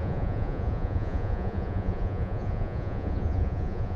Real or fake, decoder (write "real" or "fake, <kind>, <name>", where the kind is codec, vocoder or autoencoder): fake, vocoder, Vocos